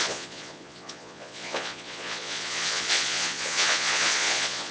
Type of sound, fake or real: fake